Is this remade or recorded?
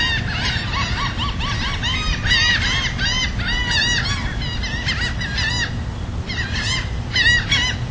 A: recorded